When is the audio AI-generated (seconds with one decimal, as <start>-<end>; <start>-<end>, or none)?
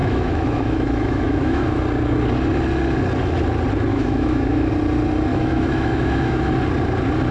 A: 0.0-1.8; 3.9-4.7; 5.3-6.4